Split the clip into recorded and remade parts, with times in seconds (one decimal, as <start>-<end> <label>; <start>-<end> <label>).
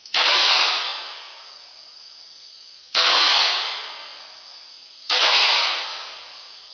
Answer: 0.0-6.7 remade